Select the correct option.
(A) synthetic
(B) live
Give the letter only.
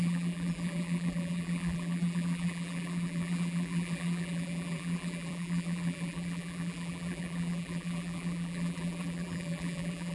A